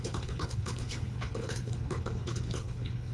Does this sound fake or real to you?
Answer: fake